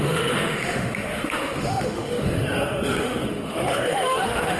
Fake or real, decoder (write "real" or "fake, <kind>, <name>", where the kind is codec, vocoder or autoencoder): fake, autoencoder, DAC-VAE